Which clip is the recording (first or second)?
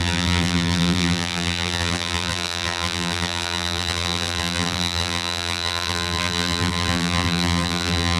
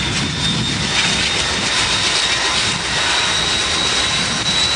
second